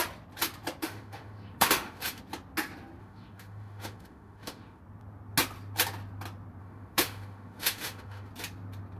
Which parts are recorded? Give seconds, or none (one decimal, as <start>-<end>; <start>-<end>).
0.0-0.8; 2.2-3.0; 4.8-6.6; 8.3-9.0